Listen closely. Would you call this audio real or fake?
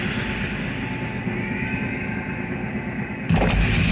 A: real